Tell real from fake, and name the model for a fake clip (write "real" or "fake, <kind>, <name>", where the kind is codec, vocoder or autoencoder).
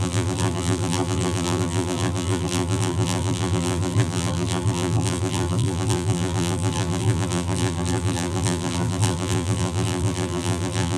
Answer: fake, vocoder, BigVGAN v2